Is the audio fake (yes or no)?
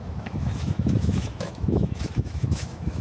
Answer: yes